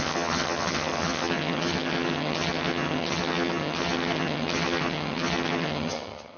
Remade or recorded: remade